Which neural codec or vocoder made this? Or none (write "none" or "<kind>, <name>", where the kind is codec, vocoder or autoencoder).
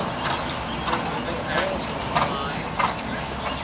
none